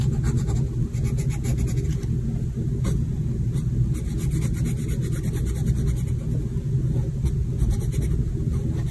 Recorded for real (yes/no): yes